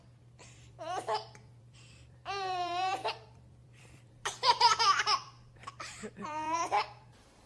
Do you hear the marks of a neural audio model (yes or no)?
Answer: yes